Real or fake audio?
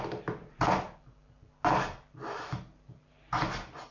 real